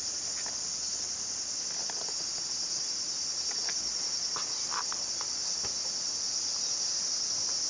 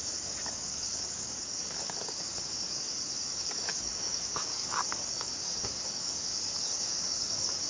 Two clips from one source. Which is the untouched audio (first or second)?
first